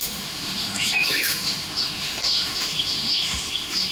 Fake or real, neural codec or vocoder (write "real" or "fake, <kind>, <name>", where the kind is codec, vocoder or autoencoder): fake, autoencoder, DAC-VAE